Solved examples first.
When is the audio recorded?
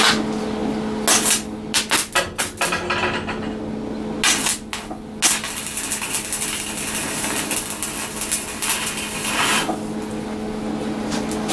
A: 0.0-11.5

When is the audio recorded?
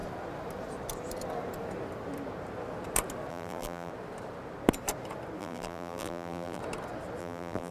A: 0.0-3.3; 3.9-5.4; 6.6-7.2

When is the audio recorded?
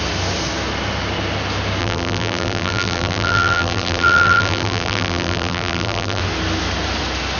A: 0.0-1.8; 6.2-7.4